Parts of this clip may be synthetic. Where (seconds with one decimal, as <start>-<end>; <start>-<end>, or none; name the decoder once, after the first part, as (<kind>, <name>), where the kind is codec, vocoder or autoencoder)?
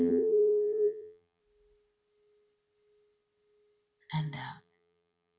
0.0-1.4 (vocoder, BigVGAN v2); 4.6-5.4